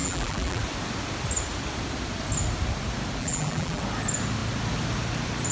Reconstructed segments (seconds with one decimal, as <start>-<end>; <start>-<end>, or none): 0.0-0.6; 3.2-3.8